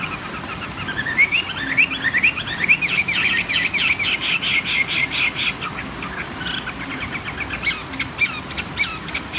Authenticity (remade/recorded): recorded